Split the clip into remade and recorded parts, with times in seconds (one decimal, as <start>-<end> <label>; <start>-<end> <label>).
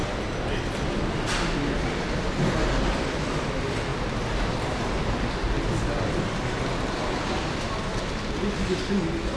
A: 0.0-9.4 recorded